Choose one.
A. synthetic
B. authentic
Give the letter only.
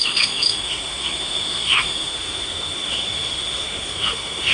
A